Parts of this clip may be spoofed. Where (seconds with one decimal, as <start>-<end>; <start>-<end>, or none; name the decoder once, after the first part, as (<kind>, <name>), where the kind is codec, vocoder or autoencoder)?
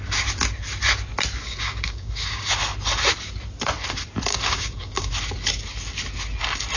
1.4-2.5 (codec, DAC); 4.3-5.1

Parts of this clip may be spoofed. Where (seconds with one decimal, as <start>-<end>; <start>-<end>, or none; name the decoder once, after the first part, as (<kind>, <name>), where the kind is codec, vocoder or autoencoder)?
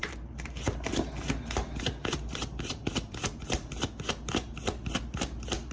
none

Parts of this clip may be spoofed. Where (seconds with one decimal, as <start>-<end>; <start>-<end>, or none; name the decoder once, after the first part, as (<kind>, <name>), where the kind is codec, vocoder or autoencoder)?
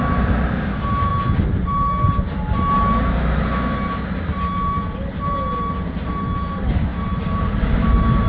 none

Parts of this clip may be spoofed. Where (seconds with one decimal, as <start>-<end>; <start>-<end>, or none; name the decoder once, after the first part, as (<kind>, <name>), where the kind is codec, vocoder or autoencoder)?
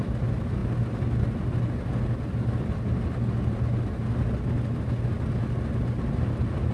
none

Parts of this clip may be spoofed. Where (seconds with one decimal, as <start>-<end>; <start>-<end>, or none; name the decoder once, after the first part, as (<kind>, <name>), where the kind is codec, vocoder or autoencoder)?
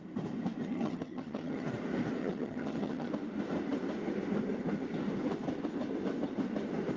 0.6-1.7 (vocoder, HiFi-GAN); 2.2-3.1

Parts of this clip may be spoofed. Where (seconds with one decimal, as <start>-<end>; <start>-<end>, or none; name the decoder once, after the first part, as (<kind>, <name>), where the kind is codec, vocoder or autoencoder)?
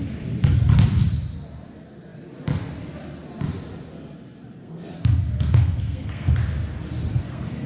4.6-6.3 (codec, SNAC); 7.1-7.7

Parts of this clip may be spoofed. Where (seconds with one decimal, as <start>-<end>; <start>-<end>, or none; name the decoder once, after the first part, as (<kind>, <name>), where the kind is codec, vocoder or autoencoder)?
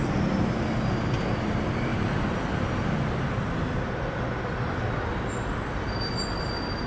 none